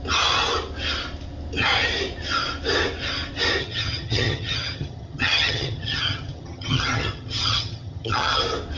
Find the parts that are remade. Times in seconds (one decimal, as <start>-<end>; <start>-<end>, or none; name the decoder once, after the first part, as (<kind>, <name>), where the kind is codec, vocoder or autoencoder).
3.6-8.4 (vocoder, HiFi-GAN)